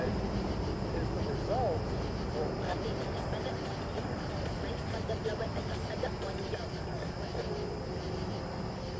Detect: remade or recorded recorded